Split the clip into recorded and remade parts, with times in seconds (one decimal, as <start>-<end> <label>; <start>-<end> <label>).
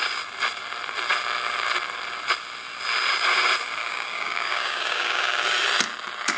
0.0-3.8 recorded; 3.8-5.4 remade; 5.4-6.4 recorded